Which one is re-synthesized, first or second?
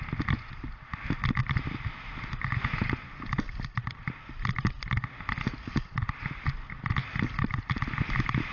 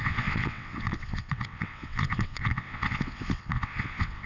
second